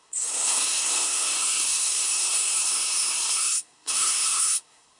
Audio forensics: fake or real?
fake